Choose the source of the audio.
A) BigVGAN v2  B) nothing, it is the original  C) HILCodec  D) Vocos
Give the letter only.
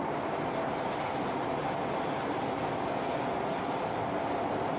B